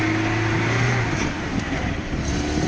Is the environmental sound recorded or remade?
recorded